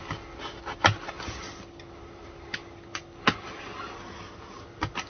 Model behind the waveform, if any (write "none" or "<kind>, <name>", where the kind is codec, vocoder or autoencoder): none